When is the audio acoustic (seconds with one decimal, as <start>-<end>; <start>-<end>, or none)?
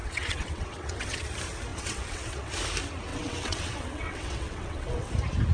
1.2-1.7; 2.5-3.1; 5.1-5.5